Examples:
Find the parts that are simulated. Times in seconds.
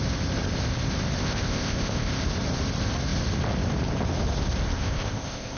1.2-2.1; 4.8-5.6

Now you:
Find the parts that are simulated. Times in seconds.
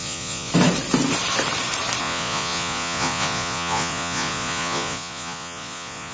0.0-0.5; 2.0-6.1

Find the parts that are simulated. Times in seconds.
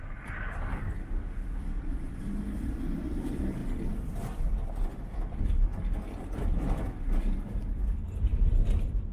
1.0-1.6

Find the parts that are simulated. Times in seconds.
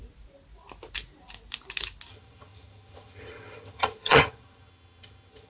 2.1-5.5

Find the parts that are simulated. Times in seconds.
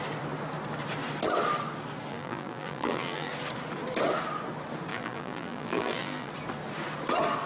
2.1-3.3; 4.9-6.3